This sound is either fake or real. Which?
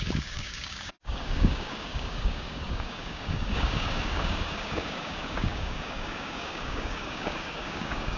fake